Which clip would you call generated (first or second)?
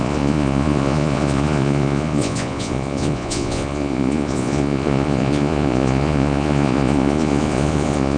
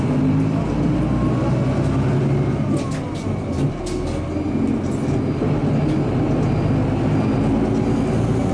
first